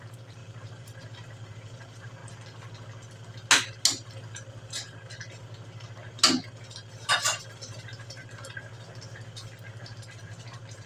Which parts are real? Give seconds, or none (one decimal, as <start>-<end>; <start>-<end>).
2.2-7.4; 8.2-9.8